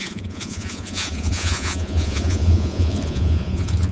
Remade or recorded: remade